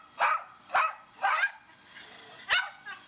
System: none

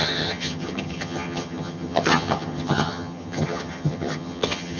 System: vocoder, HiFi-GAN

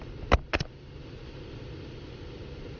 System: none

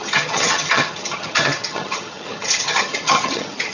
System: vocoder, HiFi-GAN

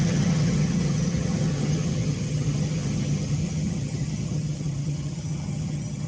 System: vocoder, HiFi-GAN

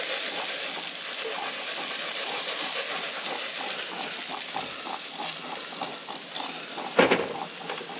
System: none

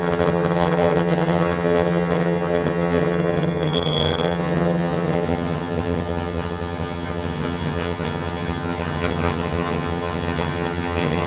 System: vocoder, HiFi-GAN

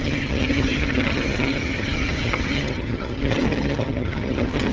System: vocoder, HiFi-GAN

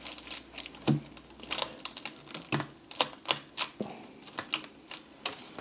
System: none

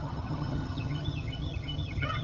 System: vocoder, HiFi-GAN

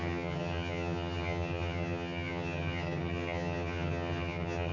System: vocoder, HiFi-GAN